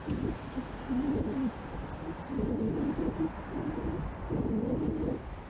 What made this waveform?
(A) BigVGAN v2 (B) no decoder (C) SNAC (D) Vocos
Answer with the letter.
B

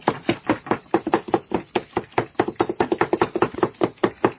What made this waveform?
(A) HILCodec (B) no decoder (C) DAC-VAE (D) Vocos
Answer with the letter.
B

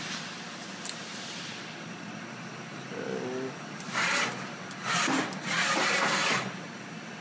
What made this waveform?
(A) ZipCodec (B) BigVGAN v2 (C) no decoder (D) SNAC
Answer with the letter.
C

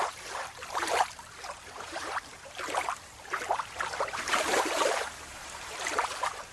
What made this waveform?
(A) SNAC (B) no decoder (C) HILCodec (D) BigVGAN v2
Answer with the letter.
D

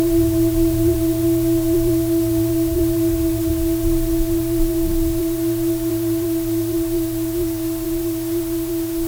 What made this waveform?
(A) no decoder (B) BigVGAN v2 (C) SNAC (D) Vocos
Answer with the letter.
B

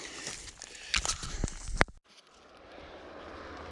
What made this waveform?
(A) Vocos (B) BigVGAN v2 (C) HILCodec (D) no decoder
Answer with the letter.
D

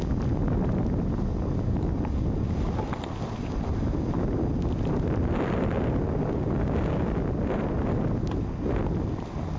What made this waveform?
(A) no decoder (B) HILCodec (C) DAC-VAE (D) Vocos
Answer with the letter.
A